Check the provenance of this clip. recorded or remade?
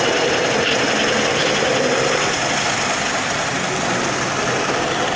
recorded